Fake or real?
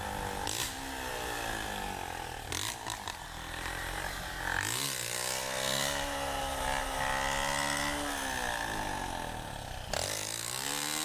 real